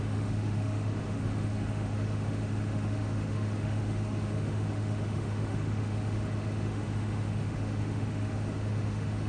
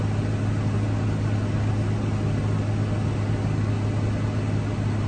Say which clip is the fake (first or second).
first